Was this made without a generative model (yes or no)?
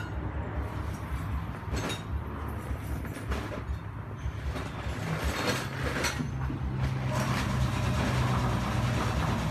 yes